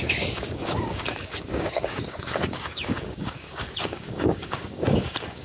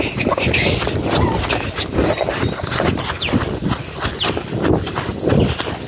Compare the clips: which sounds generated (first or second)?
first